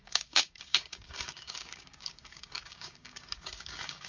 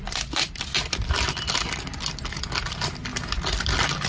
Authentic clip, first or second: second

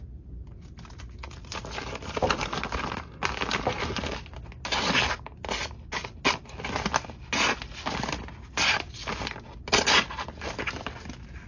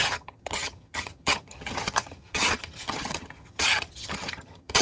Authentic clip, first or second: first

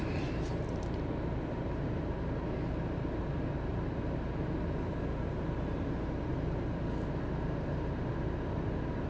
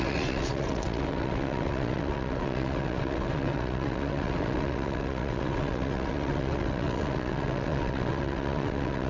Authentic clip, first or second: first